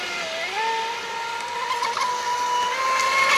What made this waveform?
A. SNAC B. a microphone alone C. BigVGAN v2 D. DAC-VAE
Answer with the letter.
B